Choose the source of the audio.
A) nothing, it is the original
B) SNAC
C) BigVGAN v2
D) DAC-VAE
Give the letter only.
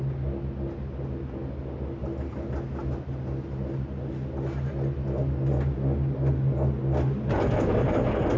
A